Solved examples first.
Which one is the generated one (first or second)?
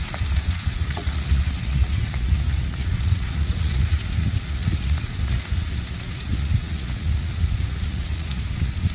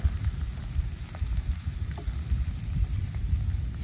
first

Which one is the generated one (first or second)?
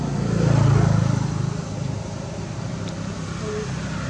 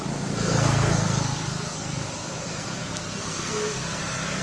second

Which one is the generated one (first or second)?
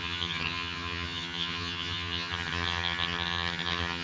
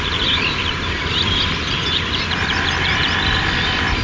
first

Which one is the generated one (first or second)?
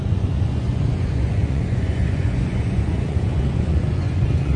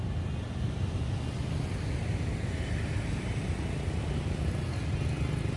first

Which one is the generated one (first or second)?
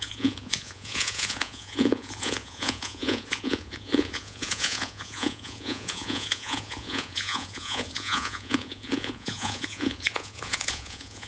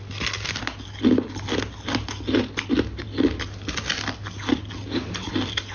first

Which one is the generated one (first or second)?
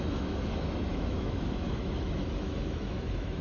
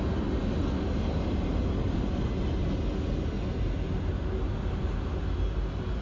first